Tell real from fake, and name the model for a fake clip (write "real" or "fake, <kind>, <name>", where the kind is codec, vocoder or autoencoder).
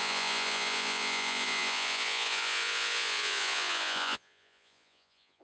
fake, vocoder, Vocos